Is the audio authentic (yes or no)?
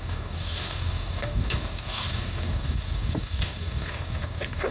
no